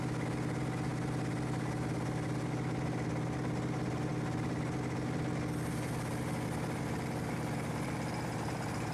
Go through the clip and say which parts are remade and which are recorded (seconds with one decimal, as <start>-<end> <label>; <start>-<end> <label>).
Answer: 0.0-8.9 recorded